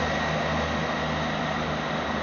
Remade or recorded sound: recorded